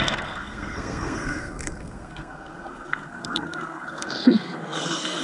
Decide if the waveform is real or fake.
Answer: fake